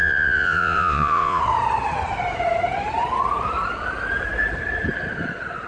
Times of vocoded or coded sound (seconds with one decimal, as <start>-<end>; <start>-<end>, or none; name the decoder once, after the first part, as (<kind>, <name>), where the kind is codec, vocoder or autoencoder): 0.0-1.4 (vocoder, Vocos)